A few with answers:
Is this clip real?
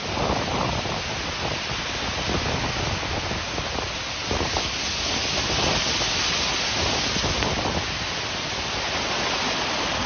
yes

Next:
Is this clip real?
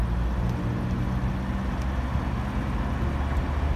yes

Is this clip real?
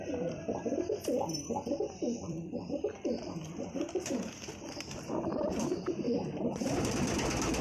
no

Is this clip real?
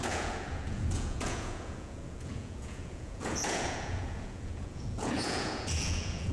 no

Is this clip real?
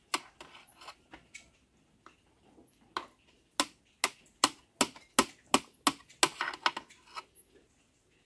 yes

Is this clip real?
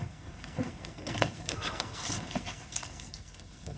no